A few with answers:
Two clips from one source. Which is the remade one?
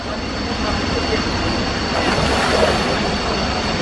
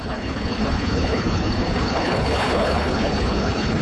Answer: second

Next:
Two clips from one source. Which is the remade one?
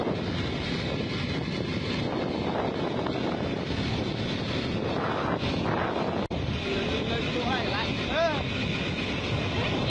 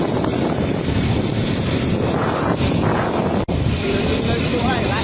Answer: second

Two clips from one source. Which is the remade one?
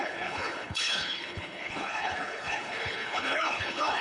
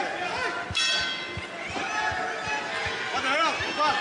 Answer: first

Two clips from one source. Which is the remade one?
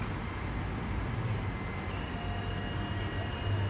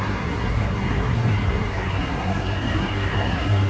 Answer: second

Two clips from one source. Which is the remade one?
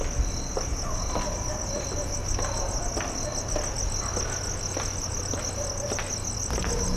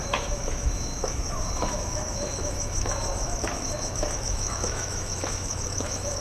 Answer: second